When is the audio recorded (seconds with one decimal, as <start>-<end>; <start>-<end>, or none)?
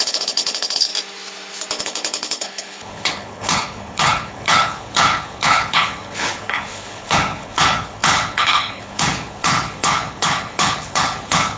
0.9-1.8